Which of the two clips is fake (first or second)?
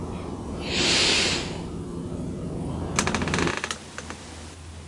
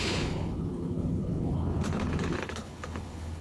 second